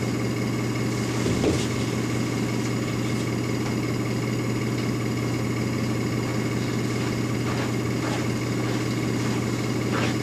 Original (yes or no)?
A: yes